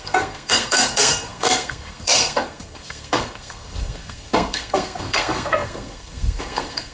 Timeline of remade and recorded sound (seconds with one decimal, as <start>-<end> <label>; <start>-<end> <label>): 0.0-6.9 remade